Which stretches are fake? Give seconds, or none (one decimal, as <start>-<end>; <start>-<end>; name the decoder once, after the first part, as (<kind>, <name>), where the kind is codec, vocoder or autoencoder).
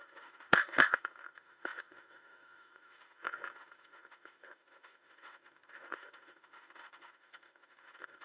0.0-8.2 (autoencoder, DAC-VAE)